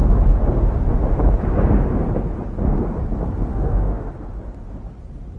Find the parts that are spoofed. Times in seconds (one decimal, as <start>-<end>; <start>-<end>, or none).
3.5-4.1